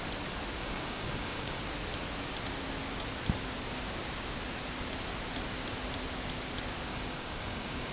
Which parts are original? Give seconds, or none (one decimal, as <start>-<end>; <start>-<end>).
0.0-0.6; 1.6-6.9

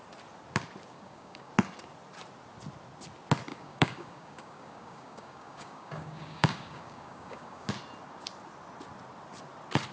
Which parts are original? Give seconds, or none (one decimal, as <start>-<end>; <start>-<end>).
0.0-0.9; 1.5-3.5; 7.7-9.9

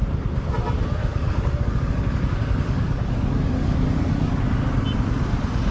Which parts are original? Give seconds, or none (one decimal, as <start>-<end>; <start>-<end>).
0.0-1.0; 4.4-5.7

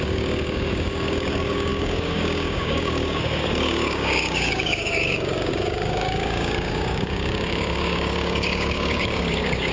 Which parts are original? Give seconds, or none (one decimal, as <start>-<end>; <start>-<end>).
none

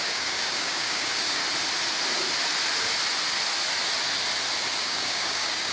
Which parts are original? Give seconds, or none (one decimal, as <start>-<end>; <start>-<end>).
1.4-4.8

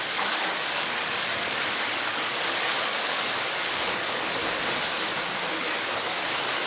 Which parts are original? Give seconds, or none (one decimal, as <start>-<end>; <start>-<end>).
4.4-5.6

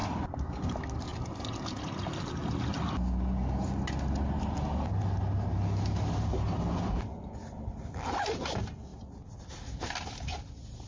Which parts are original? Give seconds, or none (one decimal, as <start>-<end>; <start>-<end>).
0.0-10.9